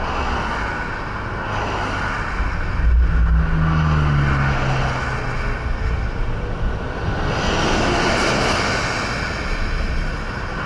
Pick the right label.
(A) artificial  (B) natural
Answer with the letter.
B